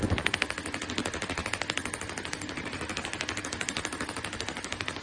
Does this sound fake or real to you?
real